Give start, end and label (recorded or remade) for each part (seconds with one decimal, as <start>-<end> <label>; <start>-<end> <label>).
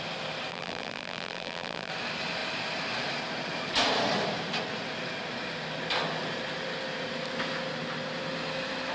0.0-0.5 recorded; 0.5-1.9 remade; 1.9-8.9 recorded